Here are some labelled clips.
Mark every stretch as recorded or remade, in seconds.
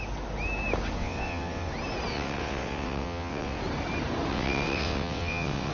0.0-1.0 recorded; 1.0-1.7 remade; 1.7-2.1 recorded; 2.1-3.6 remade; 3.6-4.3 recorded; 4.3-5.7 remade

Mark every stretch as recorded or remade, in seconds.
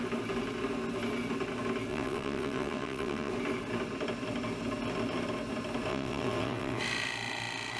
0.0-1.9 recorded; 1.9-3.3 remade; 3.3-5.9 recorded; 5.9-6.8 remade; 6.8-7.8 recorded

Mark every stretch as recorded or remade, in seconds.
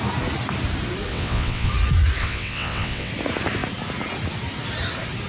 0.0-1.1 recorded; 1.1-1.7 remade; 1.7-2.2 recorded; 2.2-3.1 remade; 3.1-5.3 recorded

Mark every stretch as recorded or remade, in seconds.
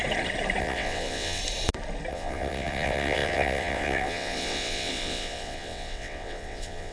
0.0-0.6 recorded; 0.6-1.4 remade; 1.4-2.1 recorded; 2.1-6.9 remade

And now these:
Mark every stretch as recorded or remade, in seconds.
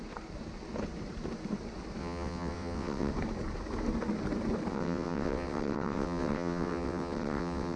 0.0-2.0 recorded; 2.0-3.1 remade; 3.1-4.7 recorded; 4.7-7.8 remade